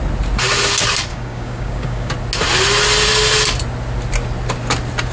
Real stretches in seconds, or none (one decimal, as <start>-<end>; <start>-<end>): 0.0-1.1; 2.1-5.1